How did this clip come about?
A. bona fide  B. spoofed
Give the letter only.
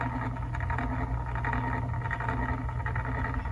A